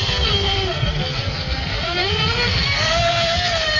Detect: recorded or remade remade